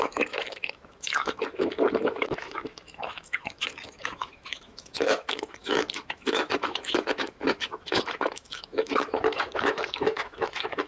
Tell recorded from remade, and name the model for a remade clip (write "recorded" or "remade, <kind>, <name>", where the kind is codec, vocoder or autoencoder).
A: remade, autoencoder, DAC-VAE